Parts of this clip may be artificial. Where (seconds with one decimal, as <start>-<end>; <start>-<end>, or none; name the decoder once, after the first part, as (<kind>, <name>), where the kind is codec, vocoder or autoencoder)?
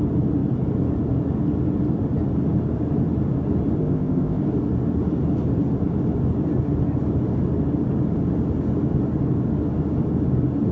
3.8-4.4 (codec, ZipCodec)